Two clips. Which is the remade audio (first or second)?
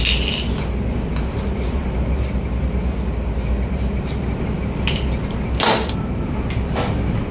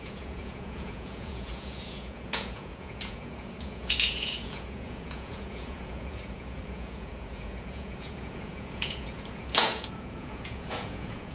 second